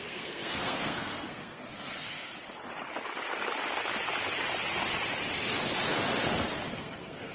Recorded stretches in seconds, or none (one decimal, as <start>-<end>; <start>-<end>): 2.3-6.7